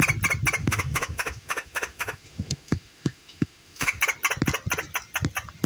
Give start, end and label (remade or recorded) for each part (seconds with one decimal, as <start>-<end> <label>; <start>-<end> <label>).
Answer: 0.0-0.6 recorded; 0.6-4.0 remade; 4.0-5.7 recorded